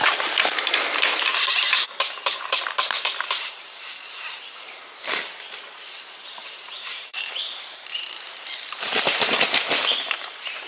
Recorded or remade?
remade